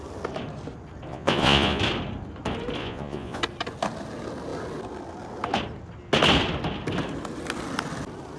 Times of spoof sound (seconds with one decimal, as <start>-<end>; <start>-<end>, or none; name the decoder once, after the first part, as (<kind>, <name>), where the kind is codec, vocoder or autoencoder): 1.1-1.8 (vocoder, Vocos); 2.8-3.4